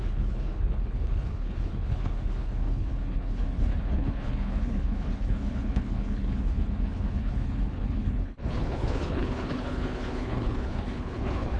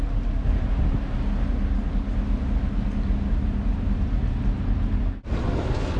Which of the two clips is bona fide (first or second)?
second